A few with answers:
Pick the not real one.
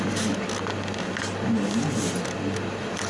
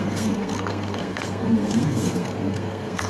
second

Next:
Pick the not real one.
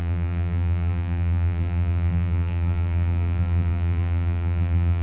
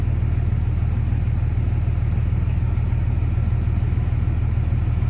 first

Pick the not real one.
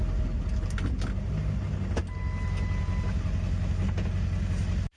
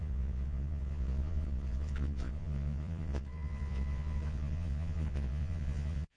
second